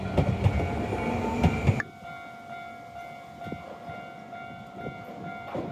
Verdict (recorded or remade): recorded